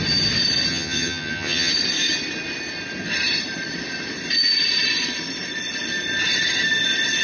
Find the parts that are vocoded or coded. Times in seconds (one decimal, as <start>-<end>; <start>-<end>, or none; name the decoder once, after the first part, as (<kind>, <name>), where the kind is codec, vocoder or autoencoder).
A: 0.7-1.7 (vocoder, HiFi-GAN)